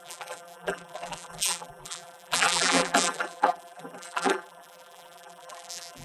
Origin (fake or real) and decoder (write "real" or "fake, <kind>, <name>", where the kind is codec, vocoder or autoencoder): fake, vocoder, BigVGAN v2